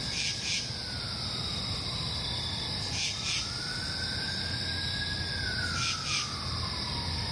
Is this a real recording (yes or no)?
yes